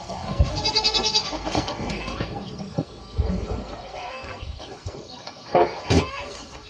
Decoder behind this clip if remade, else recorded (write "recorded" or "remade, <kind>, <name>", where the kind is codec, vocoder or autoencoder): remade, codec, SNAC